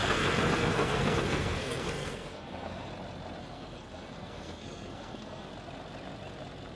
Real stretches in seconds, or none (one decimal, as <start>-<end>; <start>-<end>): 2.9-3.4; 5.5-6.8